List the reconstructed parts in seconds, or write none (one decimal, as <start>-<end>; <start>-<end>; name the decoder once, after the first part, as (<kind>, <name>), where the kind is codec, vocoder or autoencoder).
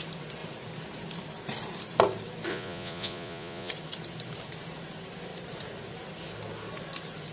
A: 2.5-3.7 (vocoder, Vocos)